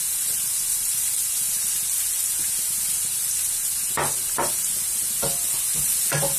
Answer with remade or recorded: recorded